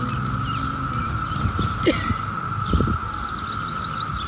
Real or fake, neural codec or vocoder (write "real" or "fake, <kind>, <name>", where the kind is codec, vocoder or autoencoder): real